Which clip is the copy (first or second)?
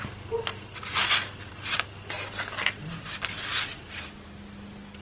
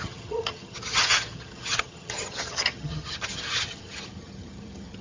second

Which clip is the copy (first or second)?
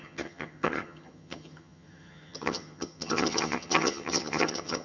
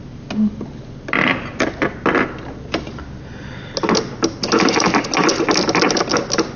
first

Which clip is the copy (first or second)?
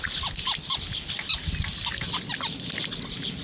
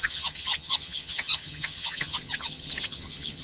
second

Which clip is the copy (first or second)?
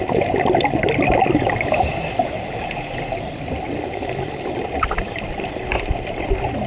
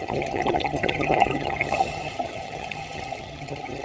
second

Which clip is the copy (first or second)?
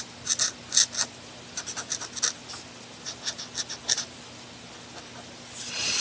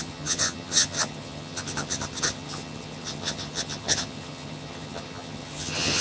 second